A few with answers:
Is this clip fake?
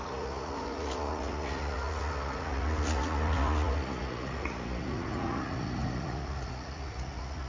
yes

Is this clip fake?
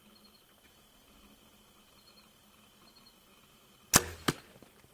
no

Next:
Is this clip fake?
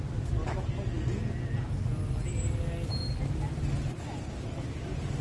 no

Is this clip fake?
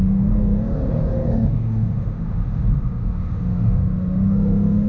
yes